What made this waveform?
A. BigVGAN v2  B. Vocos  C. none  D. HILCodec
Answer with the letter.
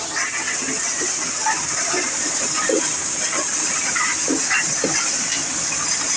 C